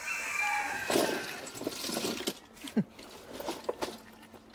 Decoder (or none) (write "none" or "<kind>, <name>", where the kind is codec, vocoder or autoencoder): none